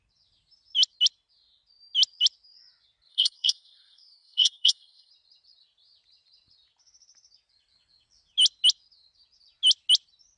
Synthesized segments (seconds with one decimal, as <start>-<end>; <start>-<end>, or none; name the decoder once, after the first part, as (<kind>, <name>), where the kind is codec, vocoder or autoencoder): 3.1-5.1 (codec, SNAC)